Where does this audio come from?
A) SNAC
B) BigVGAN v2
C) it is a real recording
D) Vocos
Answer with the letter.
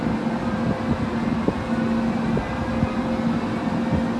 C